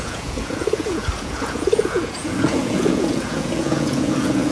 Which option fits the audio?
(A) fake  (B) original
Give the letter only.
A